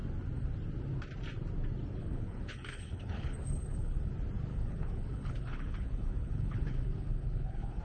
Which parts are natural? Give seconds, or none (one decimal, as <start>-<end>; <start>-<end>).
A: 0.0-2.0; 4.1-4.5